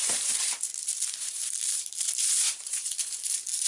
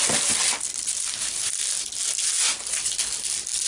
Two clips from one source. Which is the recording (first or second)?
second